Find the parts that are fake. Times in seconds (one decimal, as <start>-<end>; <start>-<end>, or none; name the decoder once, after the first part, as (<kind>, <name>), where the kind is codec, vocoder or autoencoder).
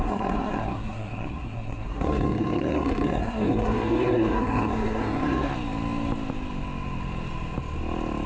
0.0-5.5 (codec, SNAC)